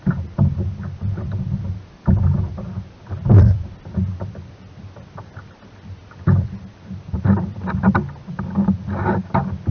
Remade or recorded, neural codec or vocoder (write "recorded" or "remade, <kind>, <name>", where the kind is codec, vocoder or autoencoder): recorded